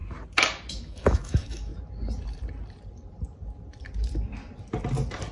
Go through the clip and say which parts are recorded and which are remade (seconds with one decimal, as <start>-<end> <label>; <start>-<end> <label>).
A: 0.0-0.7 recorded; 0.7-1.7 remade; 1.7-5.3 recorded